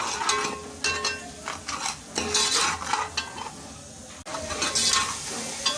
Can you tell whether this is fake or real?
real